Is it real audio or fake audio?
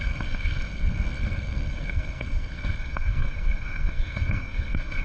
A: fake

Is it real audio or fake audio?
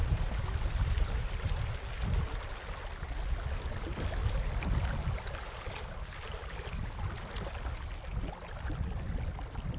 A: real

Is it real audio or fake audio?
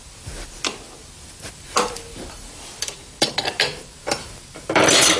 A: fake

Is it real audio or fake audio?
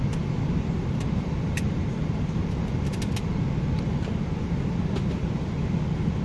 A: real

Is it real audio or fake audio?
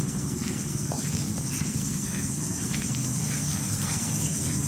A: fake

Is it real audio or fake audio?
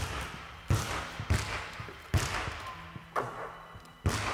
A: real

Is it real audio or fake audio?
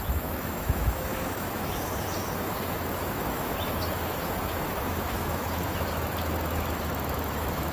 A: fake